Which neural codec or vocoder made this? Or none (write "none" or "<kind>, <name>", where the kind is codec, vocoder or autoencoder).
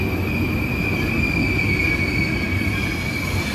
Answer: none